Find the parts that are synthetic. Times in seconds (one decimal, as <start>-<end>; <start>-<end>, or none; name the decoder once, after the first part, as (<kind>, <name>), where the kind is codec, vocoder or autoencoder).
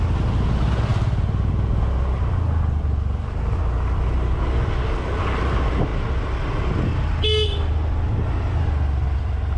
none